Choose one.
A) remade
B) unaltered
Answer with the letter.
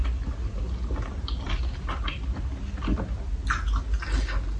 B